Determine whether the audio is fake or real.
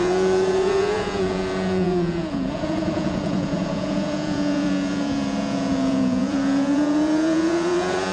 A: fake